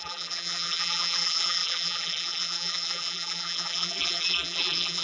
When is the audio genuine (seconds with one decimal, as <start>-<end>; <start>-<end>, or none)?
none